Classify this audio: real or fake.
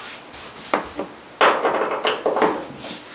real